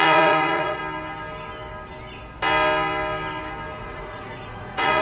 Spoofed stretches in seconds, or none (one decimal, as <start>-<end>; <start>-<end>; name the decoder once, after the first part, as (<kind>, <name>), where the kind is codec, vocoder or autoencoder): 0.0-0.8 (vocoder, Vocos); 3.8-5.0